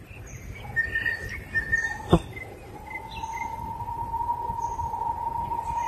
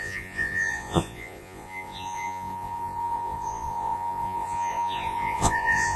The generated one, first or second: second